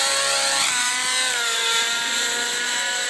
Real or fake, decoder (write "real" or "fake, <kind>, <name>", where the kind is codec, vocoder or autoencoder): fake, vocoder, BigVGAN v2